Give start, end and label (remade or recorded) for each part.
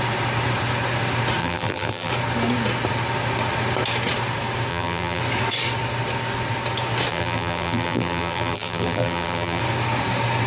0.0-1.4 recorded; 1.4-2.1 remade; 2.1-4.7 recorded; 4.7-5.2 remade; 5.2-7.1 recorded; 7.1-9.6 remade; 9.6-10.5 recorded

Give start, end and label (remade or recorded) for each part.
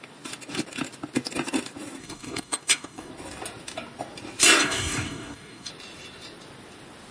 0.0-2.0 recorded; 2.0-3.1 remade; 3.1-4.6 recorded; 4.6-5.7 remade; 5.7-7.1 recorded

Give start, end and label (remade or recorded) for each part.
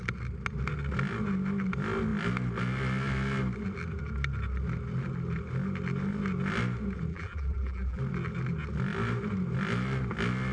0.0-7.1 recorded; 7.1-8.0 remade; 8.0-10.5 recorded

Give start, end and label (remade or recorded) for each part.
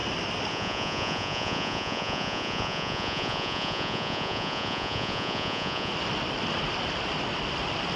0.0-0.5 recorded; 0.5-5.9 remade; 5.9-8.0 recorded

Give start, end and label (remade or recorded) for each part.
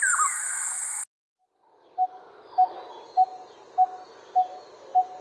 0.0-5.2 recorded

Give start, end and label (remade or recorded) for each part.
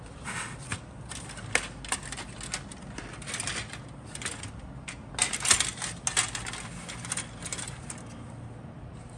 0.0-9.2 recorded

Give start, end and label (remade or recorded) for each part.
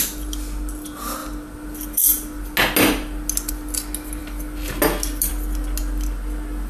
0.0-6.7 recorded